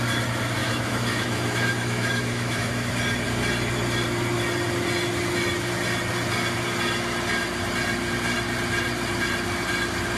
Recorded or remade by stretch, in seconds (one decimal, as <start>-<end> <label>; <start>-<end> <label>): 0.0-0.6 recorded; 0.6-2.9 remade; 2.9-10.2 recorded